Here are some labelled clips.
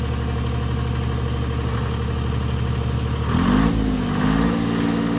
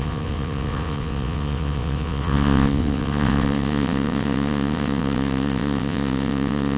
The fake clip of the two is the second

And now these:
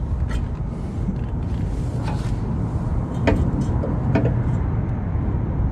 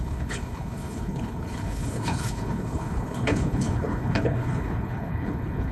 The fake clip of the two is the second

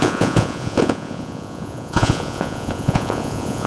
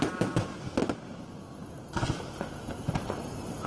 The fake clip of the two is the first